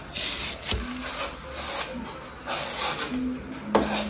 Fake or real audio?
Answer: real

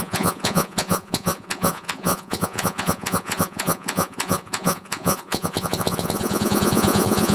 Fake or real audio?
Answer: fake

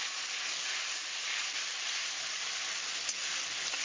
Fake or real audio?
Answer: real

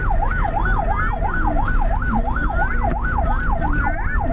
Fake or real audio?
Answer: real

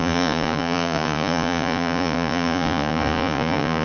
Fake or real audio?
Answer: fake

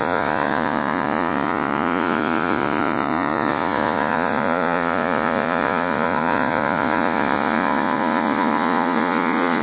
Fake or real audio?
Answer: fake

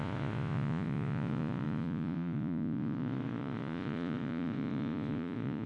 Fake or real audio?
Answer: fake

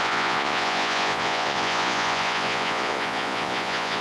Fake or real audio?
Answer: fake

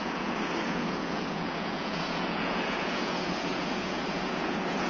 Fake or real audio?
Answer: fake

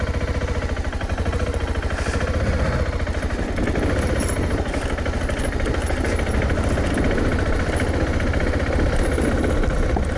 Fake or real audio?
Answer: real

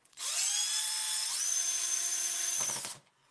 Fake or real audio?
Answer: fake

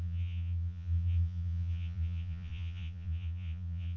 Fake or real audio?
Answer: fake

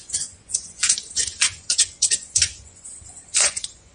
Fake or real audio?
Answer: fake